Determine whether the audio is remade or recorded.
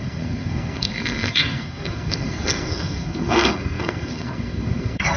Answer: remade